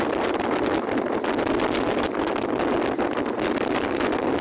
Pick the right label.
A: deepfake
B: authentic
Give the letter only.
B